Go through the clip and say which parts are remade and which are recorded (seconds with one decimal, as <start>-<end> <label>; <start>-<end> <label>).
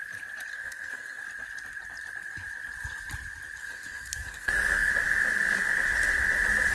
0.0-0.5 recorded; 0.5-1.2 remade; 1.2-3.6 recorded; 3.6-4.9 remade; 4.9-6.7 recorded